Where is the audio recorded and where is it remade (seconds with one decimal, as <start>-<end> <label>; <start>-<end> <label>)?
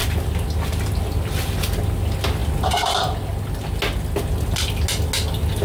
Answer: 0.0-5.6 recorded